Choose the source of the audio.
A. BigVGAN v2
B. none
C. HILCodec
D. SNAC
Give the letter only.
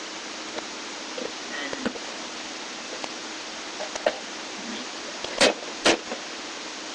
B